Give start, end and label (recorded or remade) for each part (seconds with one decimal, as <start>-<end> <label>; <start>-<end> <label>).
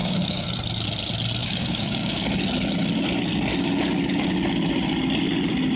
0.0-0.5 remade; 0.5-1.4 recorded; 1.4-2.2 remade; 2.2-5.8 recorded